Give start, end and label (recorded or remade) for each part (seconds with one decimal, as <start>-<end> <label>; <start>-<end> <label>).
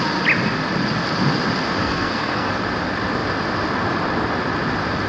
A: 0.0-1.8 recorded; 1.8-2.5 remade; 2.5-5.1 recorded